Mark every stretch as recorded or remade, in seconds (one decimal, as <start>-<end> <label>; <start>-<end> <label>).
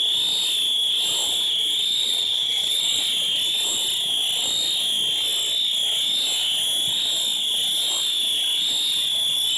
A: 0.0-2.0 recorded; 2.0-3.0 remade; 3.0-9.6 recorded